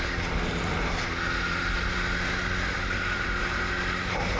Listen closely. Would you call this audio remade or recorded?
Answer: recorded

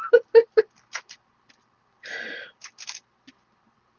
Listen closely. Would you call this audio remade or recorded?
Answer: recorded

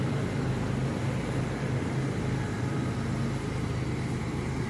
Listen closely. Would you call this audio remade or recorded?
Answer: remade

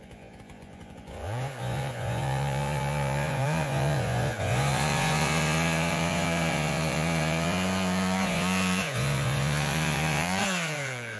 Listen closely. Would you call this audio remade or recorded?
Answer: remade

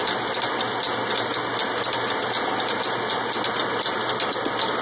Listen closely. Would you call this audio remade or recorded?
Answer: recorded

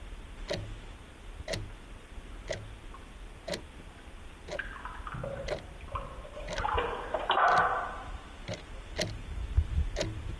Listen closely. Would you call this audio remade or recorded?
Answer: recorded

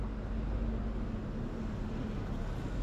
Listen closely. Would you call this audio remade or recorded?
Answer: recorded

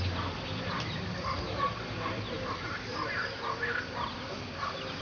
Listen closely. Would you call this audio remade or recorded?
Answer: recorded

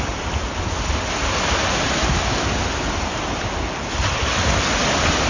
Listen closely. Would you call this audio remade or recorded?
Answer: recorded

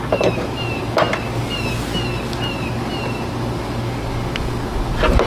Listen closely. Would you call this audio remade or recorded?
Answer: recorded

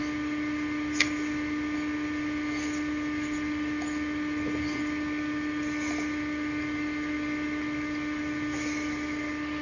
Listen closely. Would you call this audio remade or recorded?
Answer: recorded